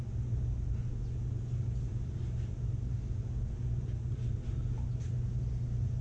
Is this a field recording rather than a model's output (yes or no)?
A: yes